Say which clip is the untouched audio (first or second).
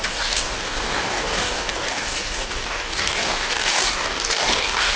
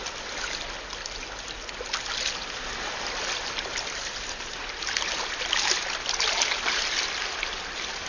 second